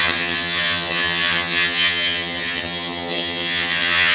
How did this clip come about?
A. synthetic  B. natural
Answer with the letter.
A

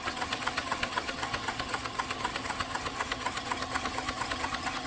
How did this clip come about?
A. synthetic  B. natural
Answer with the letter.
A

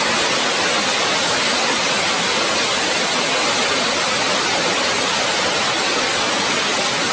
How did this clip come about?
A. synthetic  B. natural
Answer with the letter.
B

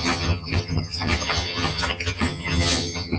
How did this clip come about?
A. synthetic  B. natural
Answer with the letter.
A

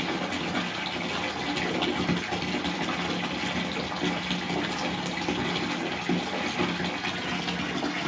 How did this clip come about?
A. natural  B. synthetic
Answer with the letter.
A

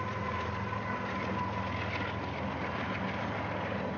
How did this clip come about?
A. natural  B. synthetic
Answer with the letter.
A